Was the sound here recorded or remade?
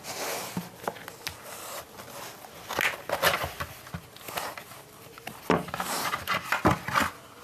recorded